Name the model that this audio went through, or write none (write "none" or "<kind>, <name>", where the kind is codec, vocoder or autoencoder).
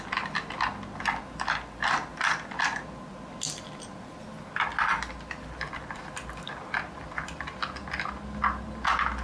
none